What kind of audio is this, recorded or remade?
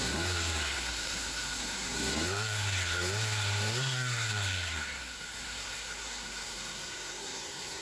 remade